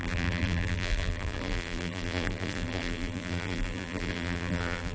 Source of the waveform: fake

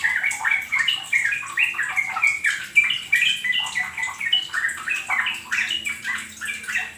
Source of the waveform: real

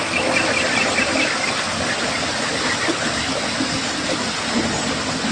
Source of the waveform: real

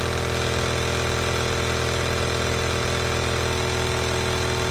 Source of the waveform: real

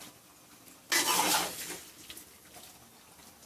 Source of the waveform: real